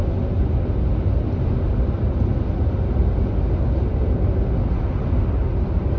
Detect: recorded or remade recorded